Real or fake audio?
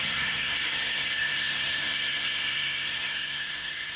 fake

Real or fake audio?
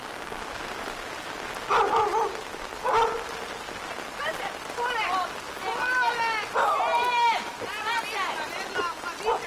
real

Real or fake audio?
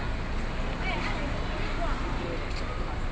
real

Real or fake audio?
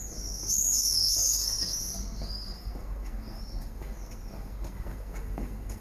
fake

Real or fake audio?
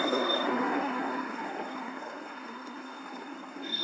fake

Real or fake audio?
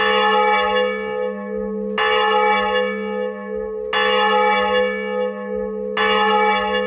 real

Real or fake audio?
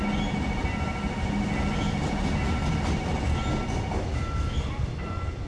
real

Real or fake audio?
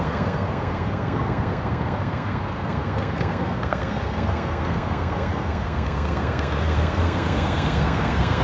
fake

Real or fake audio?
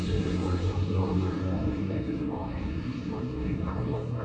fake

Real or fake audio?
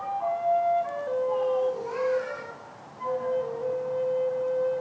real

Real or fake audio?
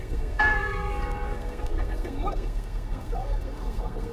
fake